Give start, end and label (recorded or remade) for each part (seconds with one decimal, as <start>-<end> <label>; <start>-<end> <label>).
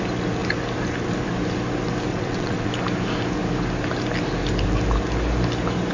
0.0-2.1 recorded; 2.1-2.7 remade; 2.7-5.9 recorded